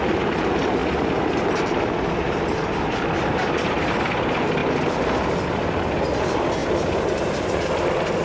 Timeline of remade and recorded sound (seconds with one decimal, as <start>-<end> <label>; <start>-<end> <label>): 0.0-8.2 recorded